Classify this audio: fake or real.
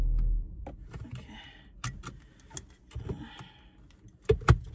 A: real